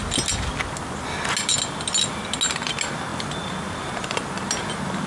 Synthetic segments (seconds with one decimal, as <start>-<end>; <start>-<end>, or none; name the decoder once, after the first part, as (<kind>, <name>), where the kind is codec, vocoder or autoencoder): none